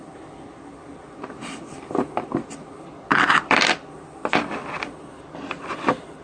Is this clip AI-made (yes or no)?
yes